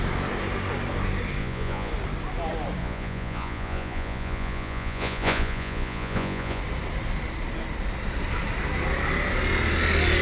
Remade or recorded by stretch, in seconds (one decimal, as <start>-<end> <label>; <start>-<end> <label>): 0.0-1.4 recorded; 1.4-1.9 remade; 1.9-2.8 recorded; 2.8-6.6 remade; 6.6-10.2 recorded